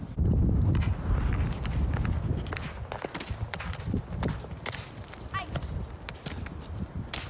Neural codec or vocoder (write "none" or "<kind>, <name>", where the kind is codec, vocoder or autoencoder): none